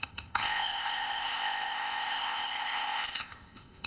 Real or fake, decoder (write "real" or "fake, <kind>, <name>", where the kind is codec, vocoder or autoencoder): fake, codec, ZipCodec